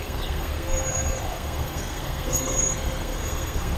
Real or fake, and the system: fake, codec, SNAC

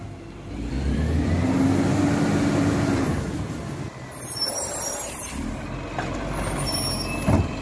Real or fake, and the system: real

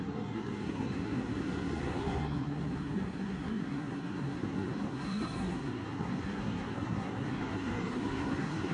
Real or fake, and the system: fake, codec, SNAC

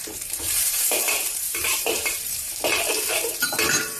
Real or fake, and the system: fake, vocoder, BigVGAN v2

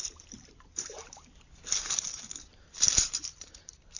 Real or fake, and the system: fake, vocoder, BigVGAN v2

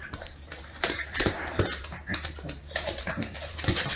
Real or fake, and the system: fake, vocoder, BigVGAN v2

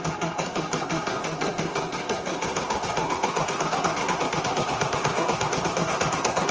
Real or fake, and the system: fake, codec, SNAC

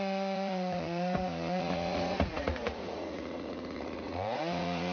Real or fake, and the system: fake, vocoder, Vocos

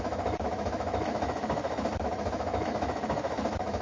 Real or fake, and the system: fake, autoencoder, DAC-VAE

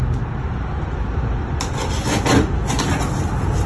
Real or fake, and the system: real